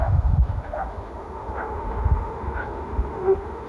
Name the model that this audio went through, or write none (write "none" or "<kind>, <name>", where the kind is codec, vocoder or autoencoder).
autoencoder, DAC-VAE